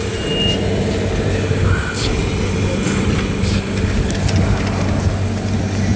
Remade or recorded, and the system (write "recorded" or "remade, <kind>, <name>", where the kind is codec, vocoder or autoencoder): recorded